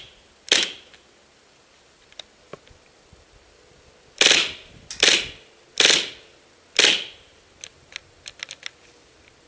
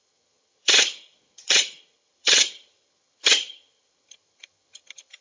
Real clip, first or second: first